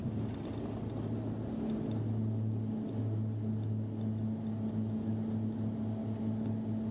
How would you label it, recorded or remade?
recorded